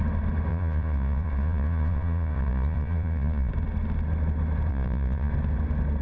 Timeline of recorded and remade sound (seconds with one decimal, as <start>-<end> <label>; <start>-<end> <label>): 0.0-0.5 recorded; 0.5-3.5 remade; 3.5-4.7 recorded; 4.7-5.3 remade; 5.3-6.0 recorded